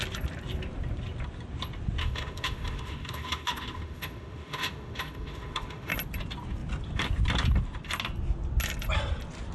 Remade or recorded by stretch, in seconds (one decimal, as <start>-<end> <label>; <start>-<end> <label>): 0.0-2.0 recorded; 2.0-5.9 remade; 5.9-9.5 recorded